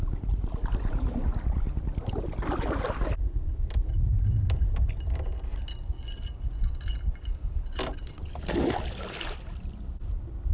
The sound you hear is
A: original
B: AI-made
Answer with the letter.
A